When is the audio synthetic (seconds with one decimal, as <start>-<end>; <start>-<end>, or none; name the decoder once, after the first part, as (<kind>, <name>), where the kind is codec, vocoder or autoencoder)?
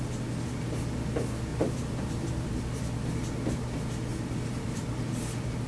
1.5-2.5 (vocoder, BigVGAN v2); 4.1-4.9